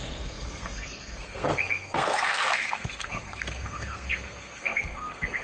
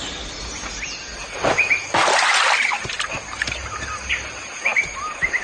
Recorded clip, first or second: second